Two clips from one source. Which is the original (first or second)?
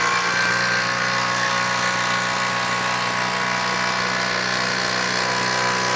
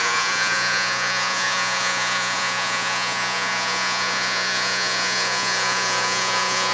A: first